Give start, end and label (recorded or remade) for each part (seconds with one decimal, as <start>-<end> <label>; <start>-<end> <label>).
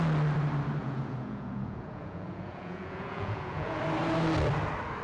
0.0-0.8 recorded; 0.8-3.8 remade; 3.8-5.0 recorded